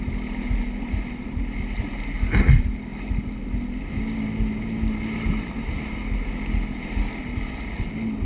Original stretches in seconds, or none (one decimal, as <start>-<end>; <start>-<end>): 0.0-8.2